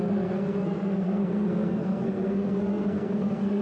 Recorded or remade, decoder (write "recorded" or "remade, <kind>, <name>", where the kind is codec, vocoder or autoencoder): remade, codec, SNAC